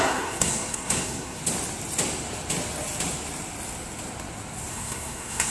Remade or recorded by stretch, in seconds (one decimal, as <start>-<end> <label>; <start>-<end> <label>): 0.0-1.4 remade; 1.4-4.7 recorded; 4.7-5.5 remade